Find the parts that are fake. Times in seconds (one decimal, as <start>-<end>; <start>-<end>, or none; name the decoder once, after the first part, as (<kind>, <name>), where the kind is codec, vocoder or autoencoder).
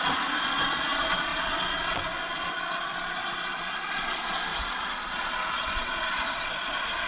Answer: 0.0-4.5 (vocoder, Vocos); 5.0-7.1